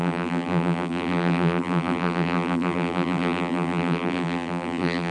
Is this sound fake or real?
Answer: fake